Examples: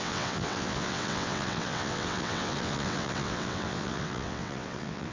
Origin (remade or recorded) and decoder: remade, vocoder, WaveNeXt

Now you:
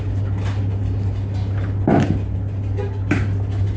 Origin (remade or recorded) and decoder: recorded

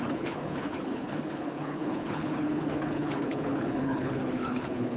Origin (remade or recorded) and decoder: remade, codec, HILCodec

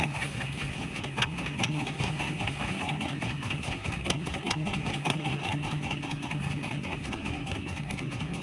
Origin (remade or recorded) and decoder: remade, codec, SNAC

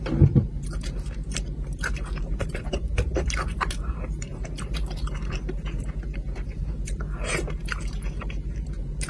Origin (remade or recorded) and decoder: remade, vocoder, BigVGAN v2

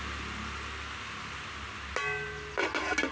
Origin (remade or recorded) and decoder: recorded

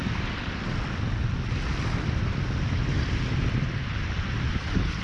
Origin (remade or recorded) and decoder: recorded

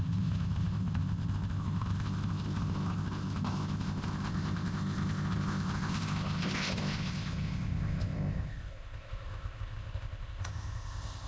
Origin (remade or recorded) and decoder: remade, codec, ZipCodec